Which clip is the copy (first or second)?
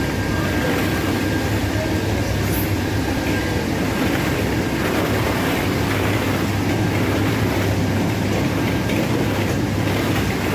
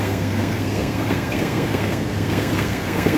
second